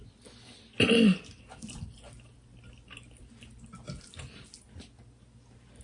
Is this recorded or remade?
recorded